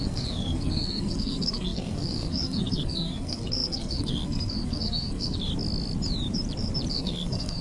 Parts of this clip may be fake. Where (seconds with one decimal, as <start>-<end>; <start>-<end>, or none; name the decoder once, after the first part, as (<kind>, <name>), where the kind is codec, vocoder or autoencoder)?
0.0-5.5 (codec, SNAC); 6.9-7.6